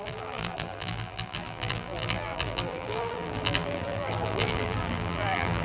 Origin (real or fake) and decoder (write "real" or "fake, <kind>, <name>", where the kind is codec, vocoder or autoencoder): fake, vocoder, BigVGAN v2